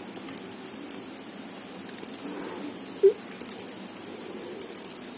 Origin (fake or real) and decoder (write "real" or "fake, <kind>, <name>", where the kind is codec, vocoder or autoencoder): real